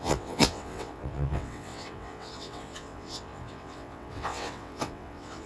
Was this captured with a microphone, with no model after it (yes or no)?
no